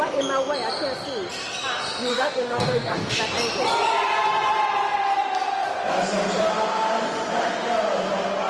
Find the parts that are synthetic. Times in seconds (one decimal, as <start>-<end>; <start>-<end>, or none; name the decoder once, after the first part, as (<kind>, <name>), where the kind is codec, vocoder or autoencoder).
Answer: 2.1-3.2 (codec, DAC)